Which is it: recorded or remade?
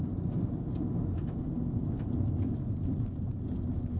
recorded